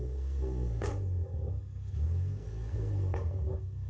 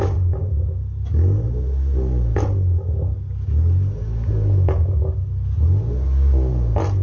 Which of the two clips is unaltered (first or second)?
second